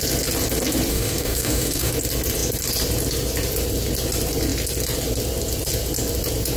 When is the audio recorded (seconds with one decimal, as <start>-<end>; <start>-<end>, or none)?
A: 0.0-0.9; 1.9-6.6